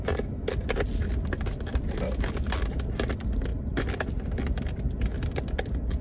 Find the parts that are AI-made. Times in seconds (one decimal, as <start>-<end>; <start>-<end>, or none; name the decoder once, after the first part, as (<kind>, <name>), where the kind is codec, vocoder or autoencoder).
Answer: none